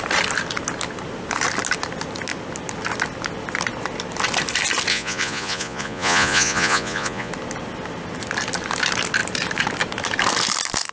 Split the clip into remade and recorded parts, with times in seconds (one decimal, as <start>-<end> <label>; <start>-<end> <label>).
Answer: 0.0-4.9 recorded; 4.9-7.3 remade; 7.3-10.9 recorded